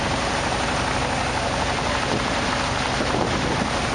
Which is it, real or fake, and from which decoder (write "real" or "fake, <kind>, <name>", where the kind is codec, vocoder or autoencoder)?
real